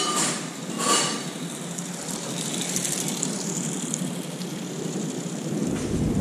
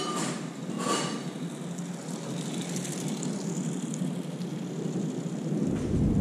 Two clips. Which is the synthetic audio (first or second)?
first